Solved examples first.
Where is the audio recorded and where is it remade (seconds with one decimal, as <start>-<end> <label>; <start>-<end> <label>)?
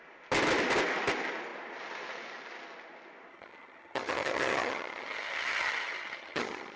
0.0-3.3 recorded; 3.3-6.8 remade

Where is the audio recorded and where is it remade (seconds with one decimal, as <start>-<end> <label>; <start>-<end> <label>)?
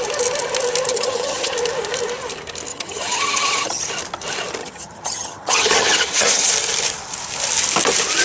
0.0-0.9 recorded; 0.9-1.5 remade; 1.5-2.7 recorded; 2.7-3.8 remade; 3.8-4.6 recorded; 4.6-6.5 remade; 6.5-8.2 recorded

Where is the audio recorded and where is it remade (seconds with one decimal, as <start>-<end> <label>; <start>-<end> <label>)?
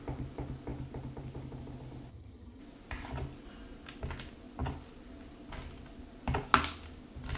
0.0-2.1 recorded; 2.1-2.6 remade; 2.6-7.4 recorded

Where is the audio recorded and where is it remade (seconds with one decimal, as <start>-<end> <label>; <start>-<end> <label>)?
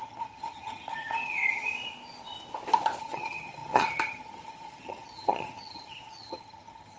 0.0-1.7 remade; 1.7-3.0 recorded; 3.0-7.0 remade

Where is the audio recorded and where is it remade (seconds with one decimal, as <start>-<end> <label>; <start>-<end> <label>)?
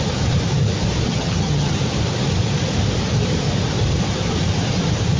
0.0-1.1 recorded; 1.1-1.7 remade; 1.7-5.2 recorded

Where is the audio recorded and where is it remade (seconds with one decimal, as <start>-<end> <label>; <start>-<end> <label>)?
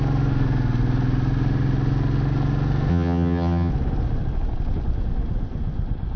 0.0-2.9 recorded; 2.9-3.7 remade; 3.7-6.2 recorded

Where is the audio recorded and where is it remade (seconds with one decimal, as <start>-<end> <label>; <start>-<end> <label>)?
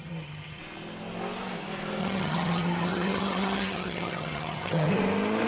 0.0-0.6 remade; 0.6-2.0 recorded; 2.0-5.0 remade; 5.0-5.5 recorded